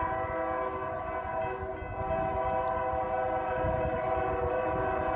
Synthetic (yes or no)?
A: no